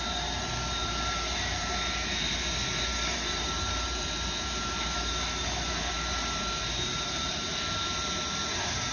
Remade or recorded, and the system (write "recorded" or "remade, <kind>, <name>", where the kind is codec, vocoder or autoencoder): remade, vocoder, BigVGAN v2